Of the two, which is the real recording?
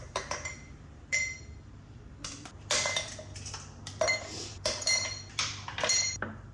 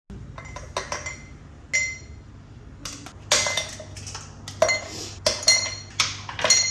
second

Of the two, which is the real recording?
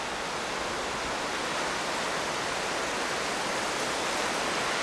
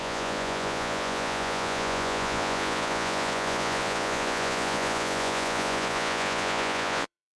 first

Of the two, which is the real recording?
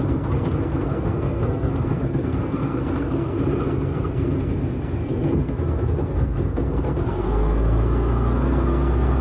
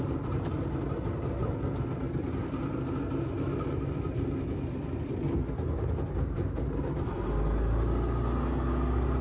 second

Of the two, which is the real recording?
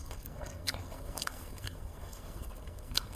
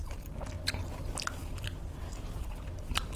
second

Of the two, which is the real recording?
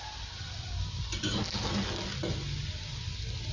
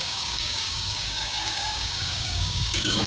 first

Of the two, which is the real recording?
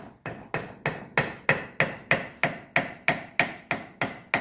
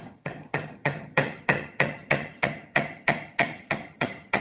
first